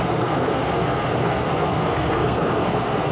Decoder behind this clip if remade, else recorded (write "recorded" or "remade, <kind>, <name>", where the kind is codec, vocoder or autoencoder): remade, codec, SNAC